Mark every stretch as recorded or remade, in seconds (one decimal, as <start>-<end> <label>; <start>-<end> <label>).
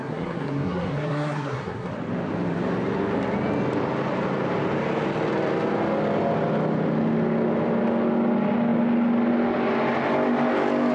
0.0-1.9 remade; 1.9-10.9 recorded